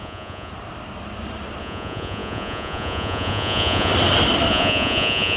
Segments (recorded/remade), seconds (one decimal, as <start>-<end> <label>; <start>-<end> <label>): 0.0-0.5 remade; 0.5-1.6 recorded; 1.6-3.9 remade; 3.9-4.5 recorded; 4.5-5.4 remade